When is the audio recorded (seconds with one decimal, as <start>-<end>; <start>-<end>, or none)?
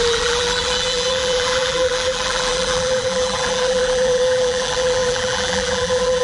none